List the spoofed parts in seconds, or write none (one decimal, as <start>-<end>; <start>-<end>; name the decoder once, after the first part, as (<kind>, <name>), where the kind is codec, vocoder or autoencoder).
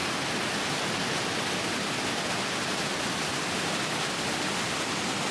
none